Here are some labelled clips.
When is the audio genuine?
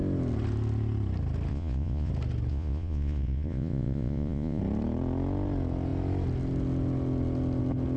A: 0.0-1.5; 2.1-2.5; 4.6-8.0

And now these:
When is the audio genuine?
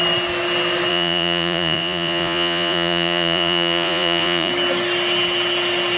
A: 0.0-0.9; 4.5-6.0